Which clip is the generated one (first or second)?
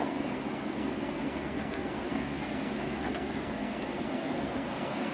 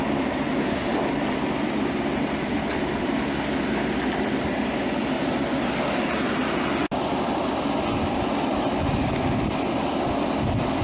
first